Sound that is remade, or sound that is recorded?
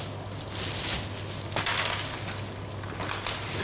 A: recorded